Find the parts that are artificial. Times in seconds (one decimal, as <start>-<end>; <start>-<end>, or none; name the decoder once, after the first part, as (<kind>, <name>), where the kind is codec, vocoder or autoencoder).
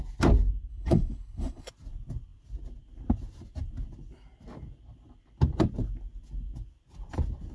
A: 0.7-1.7 (codec, HILCodec)